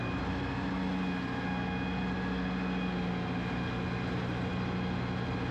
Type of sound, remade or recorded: recorded